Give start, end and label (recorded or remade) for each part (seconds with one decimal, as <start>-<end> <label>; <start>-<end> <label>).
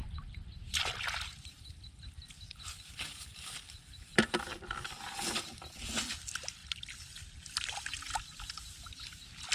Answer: 0.0-9.5 recorded